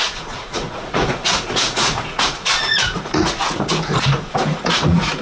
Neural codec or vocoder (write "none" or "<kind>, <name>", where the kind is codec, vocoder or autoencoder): vocoder, Vocos